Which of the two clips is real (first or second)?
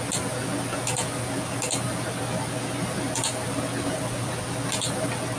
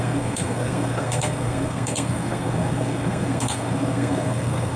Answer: first